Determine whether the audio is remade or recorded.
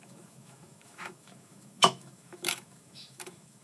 remade